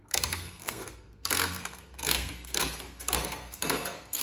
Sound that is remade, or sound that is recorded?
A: remade